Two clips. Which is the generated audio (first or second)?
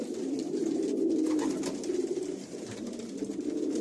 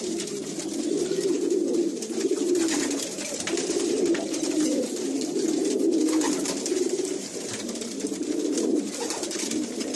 second